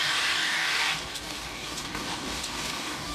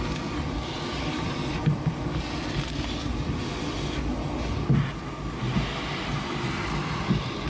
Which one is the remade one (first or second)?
first